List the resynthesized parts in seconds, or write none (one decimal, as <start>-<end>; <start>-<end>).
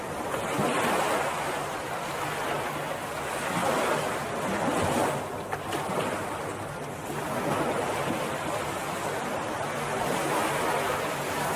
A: none